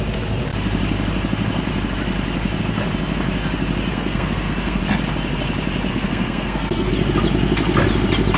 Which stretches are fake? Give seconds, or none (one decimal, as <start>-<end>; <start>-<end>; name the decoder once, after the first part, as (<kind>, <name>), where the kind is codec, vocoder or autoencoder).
3.9-4.8 (codec, SNAC); 5.9-6.9